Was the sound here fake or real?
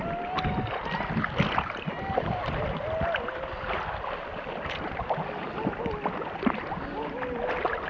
real